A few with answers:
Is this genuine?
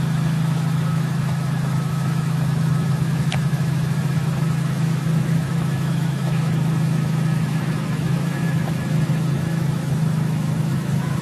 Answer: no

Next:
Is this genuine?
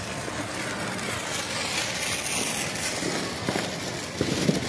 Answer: yes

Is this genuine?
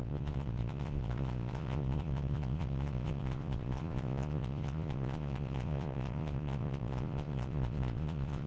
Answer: no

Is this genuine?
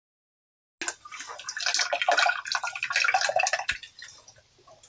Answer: yes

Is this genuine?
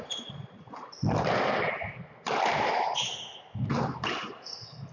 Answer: yes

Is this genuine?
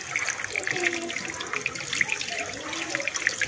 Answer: yes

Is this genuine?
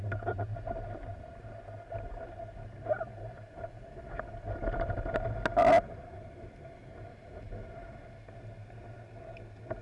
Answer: yes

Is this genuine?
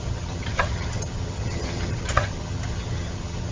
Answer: no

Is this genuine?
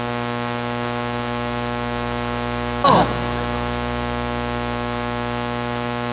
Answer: yes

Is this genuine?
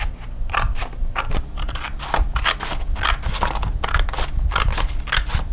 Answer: yes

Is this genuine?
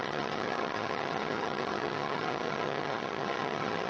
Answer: no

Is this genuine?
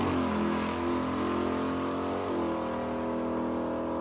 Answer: yes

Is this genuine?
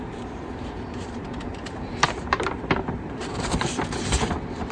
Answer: no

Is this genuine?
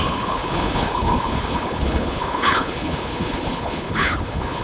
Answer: no